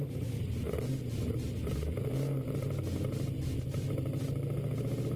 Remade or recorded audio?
recorded